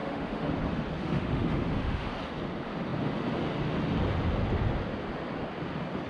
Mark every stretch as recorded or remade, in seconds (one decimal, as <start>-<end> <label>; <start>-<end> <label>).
0.0-0.5 remade; 0.5-1.0 recorded; 1.0-2.1 remade; 2.1-6.1 recorded